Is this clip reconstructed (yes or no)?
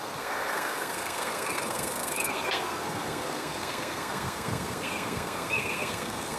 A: yes